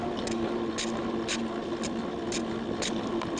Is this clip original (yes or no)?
yes